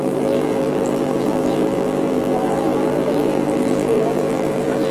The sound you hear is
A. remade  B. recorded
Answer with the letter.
A